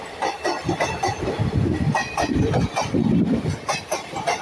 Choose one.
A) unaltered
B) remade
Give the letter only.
A